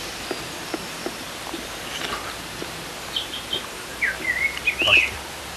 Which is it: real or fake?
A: fake